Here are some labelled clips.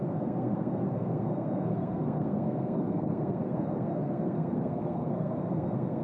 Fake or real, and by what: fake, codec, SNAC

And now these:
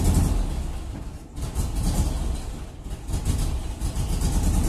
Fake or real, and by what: real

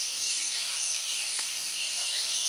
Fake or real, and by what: fake, codec, DAC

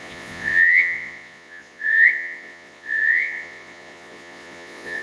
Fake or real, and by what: fake, vocoder, Vocos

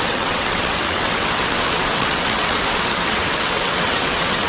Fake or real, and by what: fake, vocoder, WaveNeXt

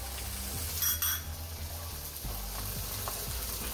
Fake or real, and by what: real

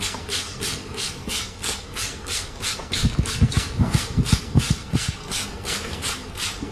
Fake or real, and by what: fake, codec, SNAC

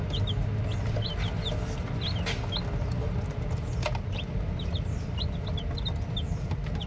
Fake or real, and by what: real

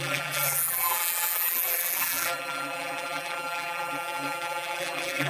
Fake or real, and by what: fake, vocoder, BigVGAN v2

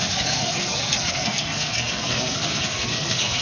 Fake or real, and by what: fake, codec, SNAC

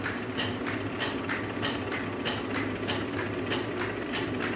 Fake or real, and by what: real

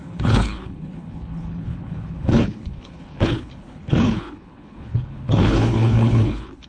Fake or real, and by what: fake, codec, HILCodec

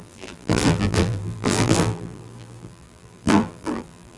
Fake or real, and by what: fake, vocoder, BigVGAN v2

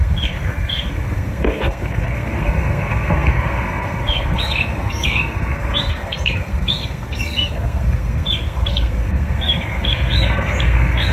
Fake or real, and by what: fake, codec, SNAC